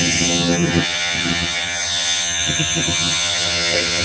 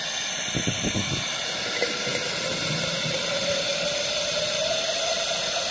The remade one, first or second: first